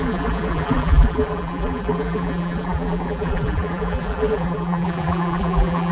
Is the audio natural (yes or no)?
no